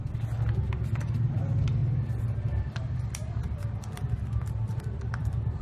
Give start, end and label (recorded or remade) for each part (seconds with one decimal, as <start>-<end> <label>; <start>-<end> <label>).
0.0-1.8 recorded; 1.8-5.6 remade